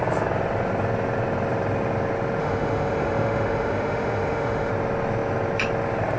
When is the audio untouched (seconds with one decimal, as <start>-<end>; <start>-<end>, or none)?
0.0-2.4; 4.7-6.2